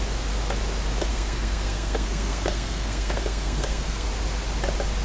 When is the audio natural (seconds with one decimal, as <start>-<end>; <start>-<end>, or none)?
0.0-1.1; 4.1-5.0